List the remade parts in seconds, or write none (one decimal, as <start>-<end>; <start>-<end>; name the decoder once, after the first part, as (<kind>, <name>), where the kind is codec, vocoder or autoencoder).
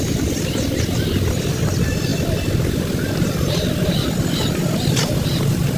none